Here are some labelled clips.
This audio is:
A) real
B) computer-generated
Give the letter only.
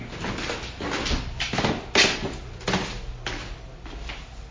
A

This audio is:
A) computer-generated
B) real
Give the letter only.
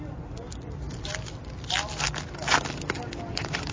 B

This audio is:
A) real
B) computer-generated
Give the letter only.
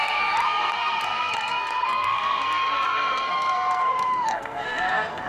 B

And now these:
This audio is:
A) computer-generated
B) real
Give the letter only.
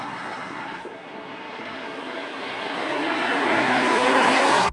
A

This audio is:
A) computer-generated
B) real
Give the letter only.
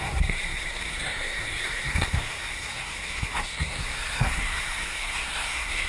A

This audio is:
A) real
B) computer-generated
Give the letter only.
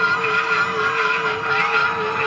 A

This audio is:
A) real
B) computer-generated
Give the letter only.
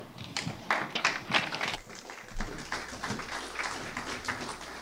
A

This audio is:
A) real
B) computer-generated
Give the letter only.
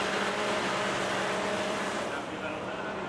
B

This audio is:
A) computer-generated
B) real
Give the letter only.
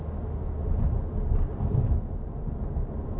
B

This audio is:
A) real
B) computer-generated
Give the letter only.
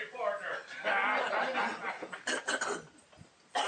A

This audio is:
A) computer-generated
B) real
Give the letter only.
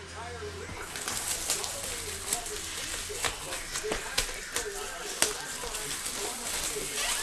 B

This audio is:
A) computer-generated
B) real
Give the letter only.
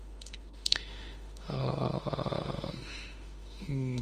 A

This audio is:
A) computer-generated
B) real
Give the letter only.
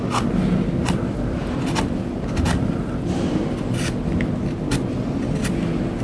B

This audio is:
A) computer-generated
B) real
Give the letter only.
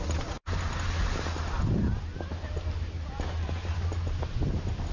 B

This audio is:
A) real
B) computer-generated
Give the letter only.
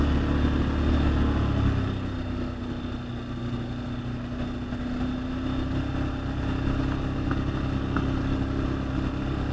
A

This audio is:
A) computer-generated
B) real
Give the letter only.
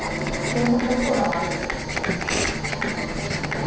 B